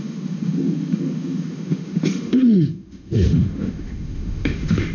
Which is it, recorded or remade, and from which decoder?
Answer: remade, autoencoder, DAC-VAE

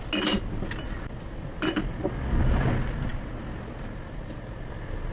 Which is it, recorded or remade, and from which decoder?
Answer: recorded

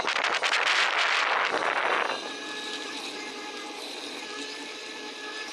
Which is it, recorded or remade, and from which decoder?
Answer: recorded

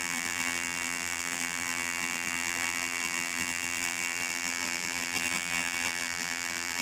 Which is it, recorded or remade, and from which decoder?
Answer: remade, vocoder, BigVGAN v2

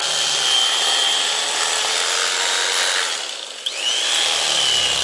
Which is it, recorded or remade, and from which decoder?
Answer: recorded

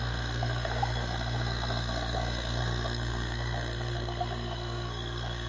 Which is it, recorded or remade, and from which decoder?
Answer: remade, codec, SNAC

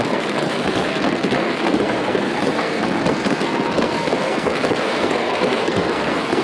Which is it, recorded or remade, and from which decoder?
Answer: remade, codec, SNAC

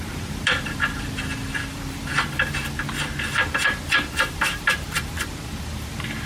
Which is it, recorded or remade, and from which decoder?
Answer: remade, vocoder, BigVGAN v2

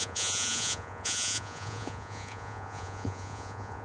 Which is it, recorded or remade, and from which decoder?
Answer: remade, vocoder, Vocos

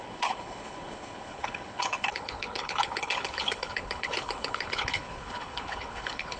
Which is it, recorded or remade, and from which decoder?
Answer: remade, codec, HILCodec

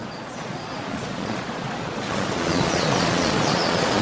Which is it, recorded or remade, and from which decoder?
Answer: remade, vocoder, Vocos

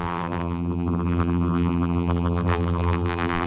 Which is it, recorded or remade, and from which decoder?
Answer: remade, vocoder, BigVGAN v2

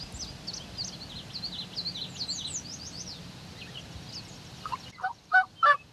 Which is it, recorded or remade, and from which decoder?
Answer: recorded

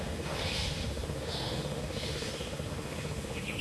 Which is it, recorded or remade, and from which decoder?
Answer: remade, autoencoder, DAC-VAE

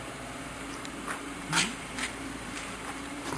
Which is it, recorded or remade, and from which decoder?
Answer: remade, vocoder, BigVGAN v2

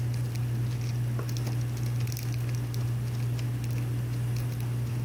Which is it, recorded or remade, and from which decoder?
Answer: recorded